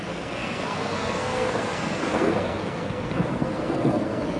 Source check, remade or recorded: remade